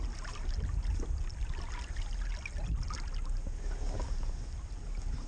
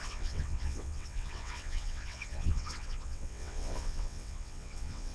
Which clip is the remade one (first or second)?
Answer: second